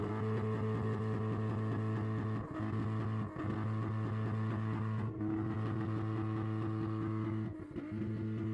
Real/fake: real